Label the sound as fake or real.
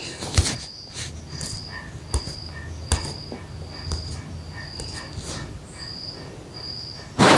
real